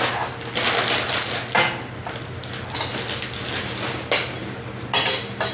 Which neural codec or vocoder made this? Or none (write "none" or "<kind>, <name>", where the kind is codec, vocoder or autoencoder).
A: none